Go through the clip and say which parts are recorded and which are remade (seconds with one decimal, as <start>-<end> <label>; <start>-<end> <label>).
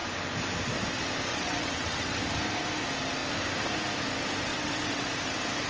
0.0-1.3 recorded; 1.3-2.2 remade; 2.2-4.5 recorded; 4.5-5.1 remade; 5.1-5.7 recorded